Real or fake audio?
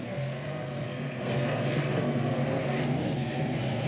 fake